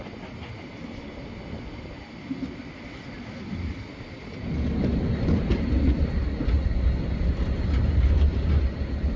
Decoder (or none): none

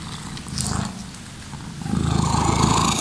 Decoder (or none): none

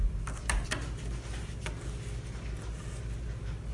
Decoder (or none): none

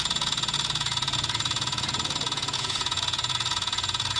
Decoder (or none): vocoder, Vocos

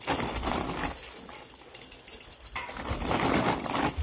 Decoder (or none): none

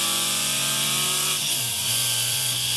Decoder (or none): vocoder, Vocos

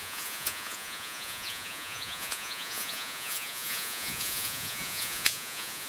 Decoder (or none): vocoder, Vocos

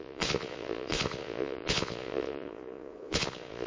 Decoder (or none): vocoder, Vocos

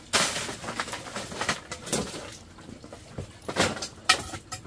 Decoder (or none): none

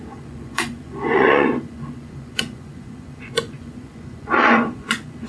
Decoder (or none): vocoder, Vocos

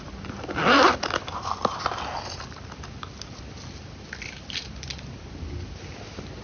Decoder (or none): none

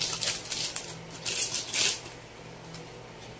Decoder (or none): none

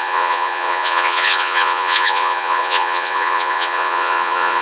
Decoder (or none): vocoder, Vocos